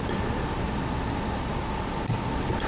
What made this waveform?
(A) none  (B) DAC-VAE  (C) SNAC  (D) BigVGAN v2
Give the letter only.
A